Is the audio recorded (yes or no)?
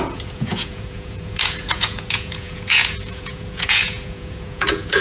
no